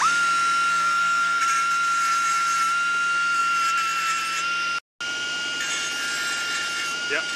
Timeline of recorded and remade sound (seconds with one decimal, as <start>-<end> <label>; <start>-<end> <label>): 0.0-0.7 recorded; 0.7-1.4 remade; 1.4-7.4 recorded